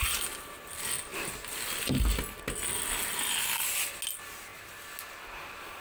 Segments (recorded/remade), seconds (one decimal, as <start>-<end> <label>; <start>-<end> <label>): 0.0-5.8 recorded